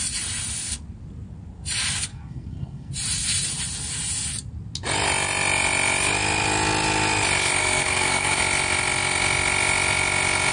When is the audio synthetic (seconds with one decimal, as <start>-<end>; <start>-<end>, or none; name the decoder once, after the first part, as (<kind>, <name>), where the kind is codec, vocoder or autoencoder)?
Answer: 2.1-2.9 (codec, SNAC); 7.6-8.4

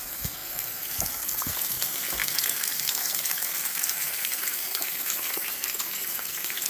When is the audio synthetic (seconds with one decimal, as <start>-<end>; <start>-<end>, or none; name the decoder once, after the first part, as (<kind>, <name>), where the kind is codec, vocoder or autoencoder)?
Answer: 0.0-6.7 (codec, SNAC)

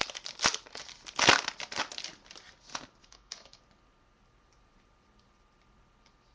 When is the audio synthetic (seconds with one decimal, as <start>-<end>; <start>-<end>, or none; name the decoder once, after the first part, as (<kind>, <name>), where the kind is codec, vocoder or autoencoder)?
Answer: 3.0-3.6 (autoencoder, DAC-VAE)

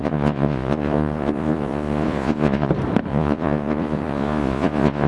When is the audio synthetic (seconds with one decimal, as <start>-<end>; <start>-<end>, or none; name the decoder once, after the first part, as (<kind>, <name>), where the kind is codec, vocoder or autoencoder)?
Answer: 0.0-2.7 (vocoder, Vocos); 3.1-5.1

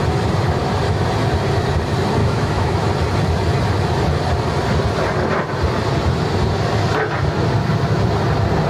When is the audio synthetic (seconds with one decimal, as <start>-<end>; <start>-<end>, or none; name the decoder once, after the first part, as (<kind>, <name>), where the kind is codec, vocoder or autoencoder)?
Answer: 2.2-2.9 (autoencoder, DAC-VAE)